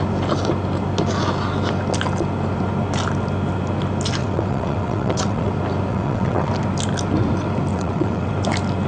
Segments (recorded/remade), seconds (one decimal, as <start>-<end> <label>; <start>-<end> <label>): 0.0-4.2 recorded; 4.2-5.5 remade; 5.5-5.9 recorded; 5.9-6.5 remade; 6.5-7.7 recorded; 7.7-8.3 remade; 8.3-8.9 recorded